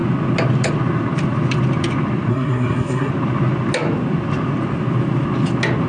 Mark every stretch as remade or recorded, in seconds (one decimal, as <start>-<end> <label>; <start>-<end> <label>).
0.0-2.3 recorded; 2.3-3.1 remade; 3.1-5.9 recorded

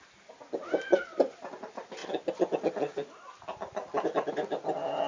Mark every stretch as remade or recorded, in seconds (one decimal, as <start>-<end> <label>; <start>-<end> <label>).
0.0-5.1 recorded

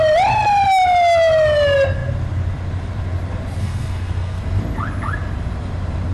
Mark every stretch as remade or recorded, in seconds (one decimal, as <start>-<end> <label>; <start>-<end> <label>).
0.0-3.6 recorded; 3.6-4.4 remade; 4.4-6.1 recorded

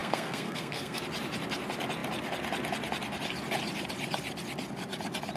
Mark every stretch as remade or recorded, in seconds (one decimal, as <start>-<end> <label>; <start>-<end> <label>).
0.0-1.0 remade; 1.0-5.4 recorded

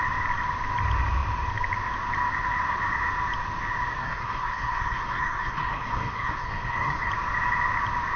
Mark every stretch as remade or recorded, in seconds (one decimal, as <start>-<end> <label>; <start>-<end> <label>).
0.0-4.0 recorded; 4.0-7.1 remade; 7.1-8.2 recorded

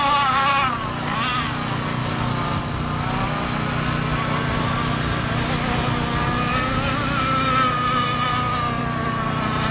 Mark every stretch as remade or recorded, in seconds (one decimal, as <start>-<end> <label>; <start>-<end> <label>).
0.0-9.7 recorded